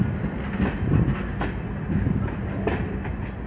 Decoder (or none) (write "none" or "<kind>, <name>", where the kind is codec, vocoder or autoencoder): none